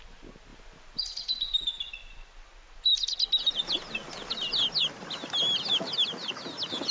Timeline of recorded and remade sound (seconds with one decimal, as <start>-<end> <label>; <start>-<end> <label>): 0.0-6.9 recorded